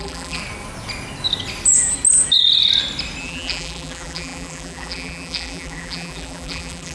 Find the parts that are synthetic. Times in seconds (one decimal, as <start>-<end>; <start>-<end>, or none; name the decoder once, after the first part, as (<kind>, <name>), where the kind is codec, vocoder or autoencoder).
0.0-0.4 (vocoder, BigVGAN v2); 3.2-6.9